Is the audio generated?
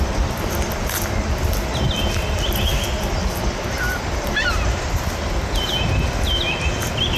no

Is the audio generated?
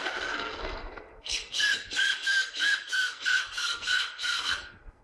yes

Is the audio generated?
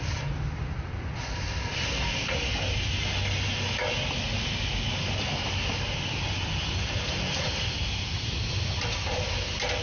no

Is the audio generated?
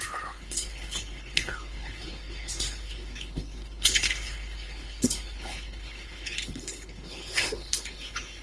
yes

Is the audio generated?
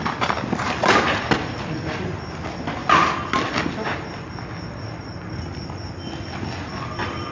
no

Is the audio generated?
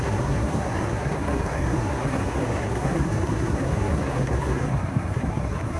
yes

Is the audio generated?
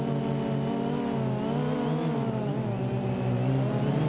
no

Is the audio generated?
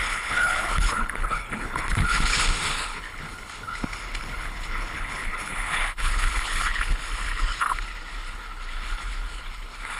yes